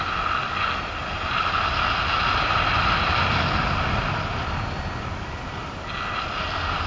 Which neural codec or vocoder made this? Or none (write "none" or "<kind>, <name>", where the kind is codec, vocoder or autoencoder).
none